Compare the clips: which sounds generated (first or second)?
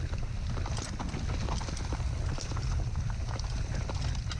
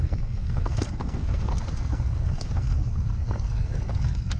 second